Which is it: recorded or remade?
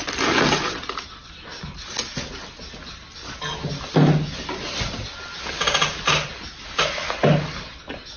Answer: recorded